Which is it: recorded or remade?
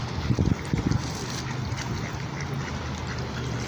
recorded